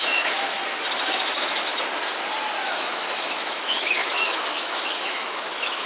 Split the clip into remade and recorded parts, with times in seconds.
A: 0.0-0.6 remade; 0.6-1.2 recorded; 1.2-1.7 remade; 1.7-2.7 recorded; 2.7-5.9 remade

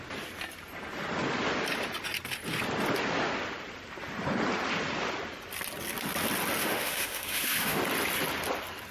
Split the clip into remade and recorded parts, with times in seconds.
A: 0.0-6.6 recorded; 6.6-7.8 remade; 7.8-8.9 recorded

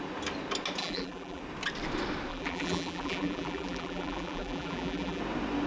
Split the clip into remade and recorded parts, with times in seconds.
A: 0.0-0.8 recorded; 0.8-1.4 remade; 1.4-2.3 recorded; 2.3-5.2 remade; 5.2-5.7 recorded

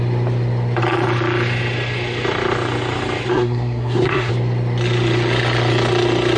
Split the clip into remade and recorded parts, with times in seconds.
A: 0.0-3.3 recorded; 3.3-4.3 remade; 4.3-6.4 recorded

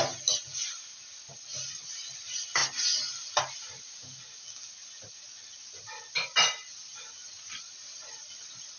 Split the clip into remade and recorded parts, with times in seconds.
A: 0.0-8.8 recorded